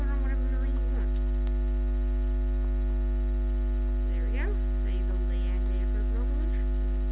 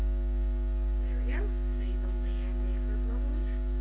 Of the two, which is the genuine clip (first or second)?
first